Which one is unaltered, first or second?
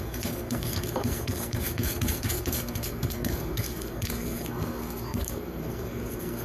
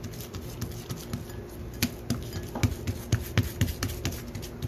second